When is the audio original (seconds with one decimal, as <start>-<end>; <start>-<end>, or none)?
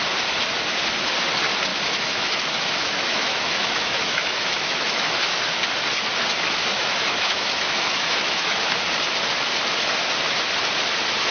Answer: 0.0-1.7; 5.4-6.7; 8.6-11.3